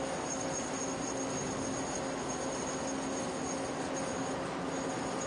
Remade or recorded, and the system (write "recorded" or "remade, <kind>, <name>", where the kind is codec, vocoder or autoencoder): recorded